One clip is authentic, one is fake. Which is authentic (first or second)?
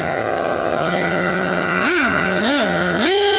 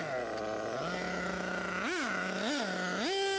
second